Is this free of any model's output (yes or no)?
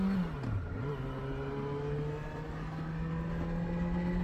yes